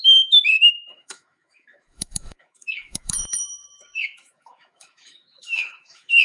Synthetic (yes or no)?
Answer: yes